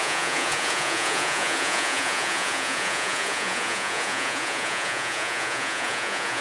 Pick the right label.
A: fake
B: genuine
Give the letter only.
A